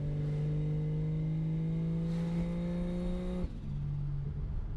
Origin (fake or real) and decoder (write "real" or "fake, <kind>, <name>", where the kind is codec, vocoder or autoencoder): real